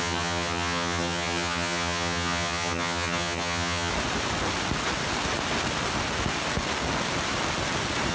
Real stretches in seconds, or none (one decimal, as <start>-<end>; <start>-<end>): 3.9-8.1